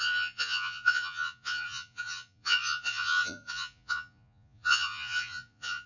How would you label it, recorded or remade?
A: remade